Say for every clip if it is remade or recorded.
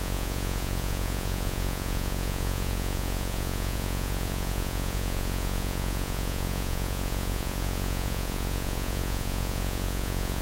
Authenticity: remade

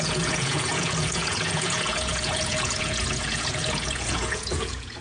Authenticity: remade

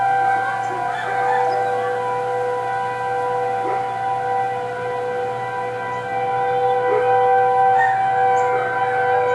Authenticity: recorded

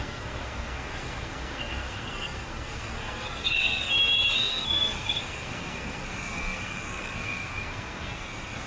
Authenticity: remade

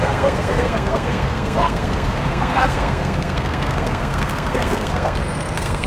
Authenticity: remade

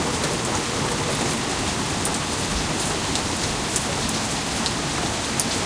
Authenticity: recorded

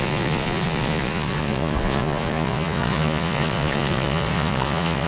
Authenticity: remade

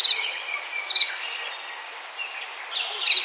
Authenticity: recorded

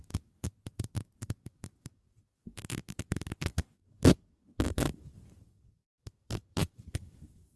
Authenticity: remade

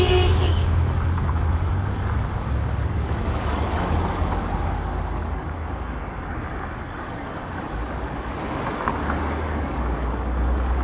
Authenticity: remade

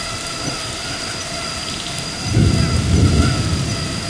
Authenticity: recorded